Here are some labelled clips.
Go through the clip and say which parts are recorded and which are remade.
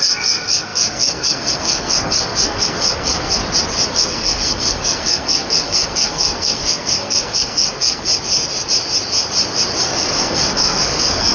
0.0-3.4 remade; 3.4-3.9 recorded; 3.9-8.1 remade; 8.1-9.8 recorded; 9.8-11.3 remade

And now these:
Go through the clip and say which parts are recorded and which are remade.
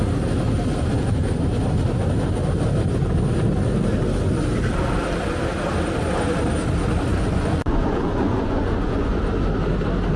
0.0-7.1 recorded; 7.1-9.2 remade; 9.2-10.2 recorded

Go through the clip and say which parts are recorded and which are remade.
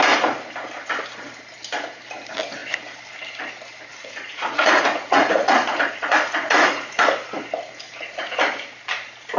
0.0-3.9 recorded; 3.9-7.1 remade; 7.1-9.4 recorded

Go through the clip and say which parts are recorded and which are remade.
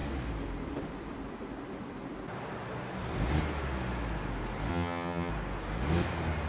0.0-4.7 recorded; 4.7-5.3 remade; 5.3-6.5 recorded